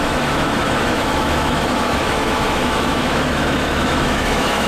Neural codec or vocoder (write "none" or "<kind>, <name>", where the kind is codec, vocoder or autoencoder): autoencoder, DAC-VAE